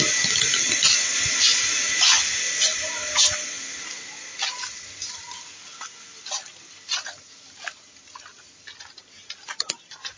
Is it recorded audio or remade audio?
recorded